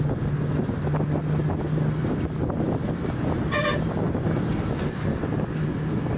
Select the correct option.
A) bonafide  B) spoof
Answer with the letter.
A